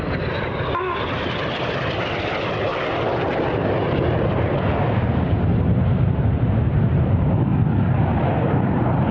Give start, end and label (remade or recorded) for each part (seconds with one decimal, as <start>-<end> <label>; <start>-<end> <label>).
0.0-2.7 recorded; 2.7-3.4 remade; 3.4-9.1 recorded